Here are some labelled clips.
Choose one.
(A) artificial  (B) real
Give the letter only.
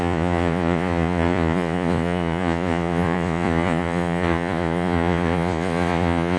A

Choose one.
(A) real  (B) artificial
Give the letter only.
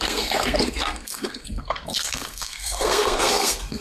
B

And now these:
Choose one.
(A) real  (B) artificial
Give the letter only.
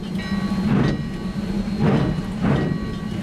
A